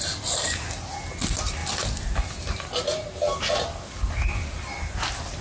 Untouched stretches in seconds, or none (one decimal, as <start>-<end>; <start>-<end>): 0.0-5.4